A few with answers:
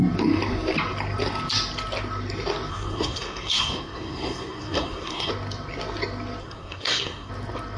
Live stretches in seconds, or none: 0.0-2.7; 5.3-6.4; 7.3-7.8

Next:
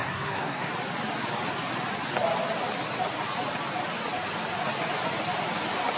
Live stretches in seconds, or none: 0.7-6.0

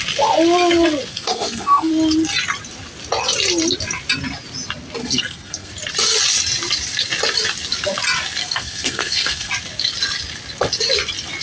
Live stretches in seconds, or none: 0.0-1.1; 1.9-5.0; 5.7-8.4; 9.5-11.4

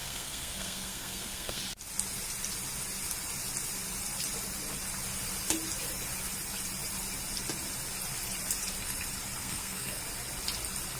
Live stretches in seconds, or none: 1.6-9.4; 10.0-11.0

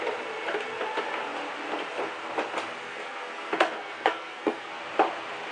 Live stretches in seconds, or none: 0.0-2.8; 4.7-5.5

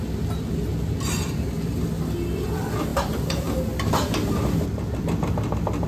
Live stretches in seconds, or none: 0.0-5.9

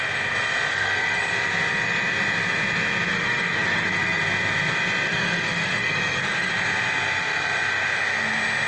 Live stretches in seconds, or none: 0.0-0.7; 1.2-3.1; 4.2-5.1; 6.5-8.7